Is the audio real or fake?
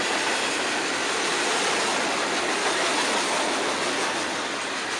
real